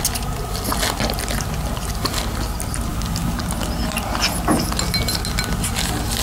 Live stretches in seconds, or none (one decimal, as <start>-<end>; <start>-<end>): 0.0-2.9; 3.4-6.2

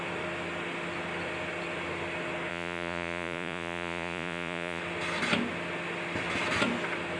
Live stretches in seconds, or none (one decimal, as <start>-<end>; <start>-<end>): 0.0-2.5; 4.8-7.2

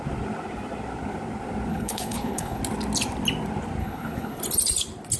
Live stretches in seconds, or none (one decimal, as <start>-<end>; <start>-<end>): 0.0-1.7; 2.6-3.8; 4.4-5.2

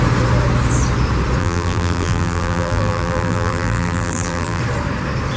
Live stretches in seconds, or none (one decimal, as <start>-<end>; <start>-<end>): 0.0-1.4; 4.6-5.4

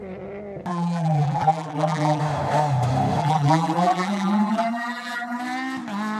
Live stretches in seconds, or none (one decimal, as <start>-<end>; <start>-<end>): 0.0-0.7; 2.2-3.2; 5.4-6.2

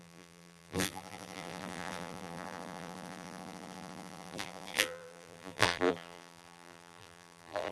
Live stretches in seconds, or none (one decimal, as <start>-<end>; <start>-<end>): none